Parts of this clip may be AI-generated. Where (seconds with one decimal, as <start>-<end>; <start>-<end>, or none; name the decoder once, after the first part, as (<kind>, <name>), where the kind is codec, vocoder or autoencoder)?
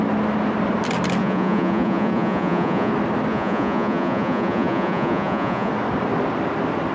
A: 1.2-2.9 (vocoder, Vocos); 3.3-5.7